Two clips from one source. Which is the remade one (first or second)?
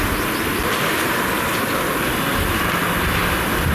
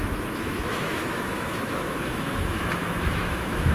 second